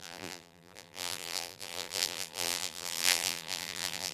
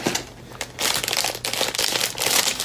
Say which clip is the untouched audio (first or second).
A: second